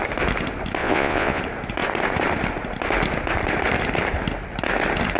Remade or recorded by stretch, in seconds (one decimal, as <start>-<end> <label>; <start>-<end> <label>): 0.0-0.8 recorded; 0.8-1.4 remade; 1.4-5.2 recorded